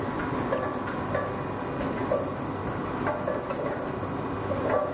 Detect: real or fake real